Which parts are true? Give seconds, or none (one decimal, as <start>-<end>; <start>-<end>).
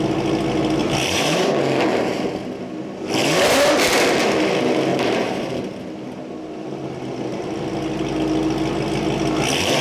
0.0-0.8; 1.5-4.9; 5.5-9.8